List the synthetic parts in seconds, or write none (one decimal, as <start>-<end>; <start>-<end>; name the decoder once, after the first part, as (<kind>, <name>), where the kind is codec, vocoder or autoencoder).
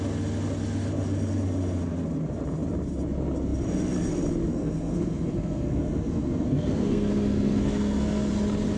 4.5-8.3 (codec, SNAC)